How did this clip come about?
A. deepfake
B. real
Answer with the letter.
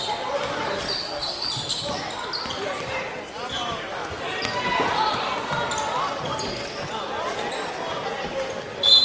B